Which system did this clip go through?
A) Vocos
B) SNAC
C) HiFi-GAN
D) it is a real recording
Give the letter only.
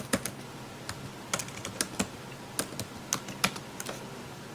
D